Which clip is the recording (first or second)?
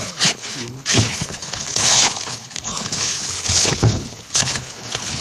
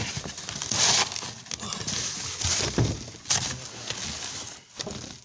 second